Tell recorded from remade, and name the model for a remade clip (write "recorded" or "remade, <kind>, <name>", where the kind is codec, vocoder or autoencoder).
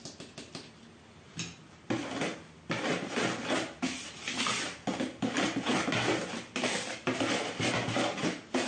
recorded